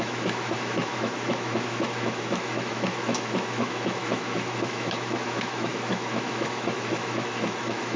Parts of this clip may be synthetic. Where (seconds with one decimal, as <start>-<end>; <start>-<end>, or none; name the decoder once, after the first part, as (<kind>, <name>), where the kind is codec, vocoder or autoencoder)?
0.0-8.0 (autoencoder, DAC-VAE)